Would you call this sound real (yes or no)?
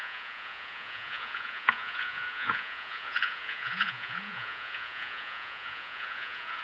no